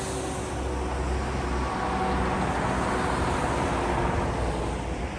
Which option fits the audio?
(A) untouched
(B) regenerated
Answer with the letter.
A